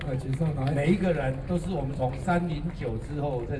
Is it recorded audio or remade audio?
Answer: recorded